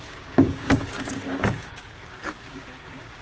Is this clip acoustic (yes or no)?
no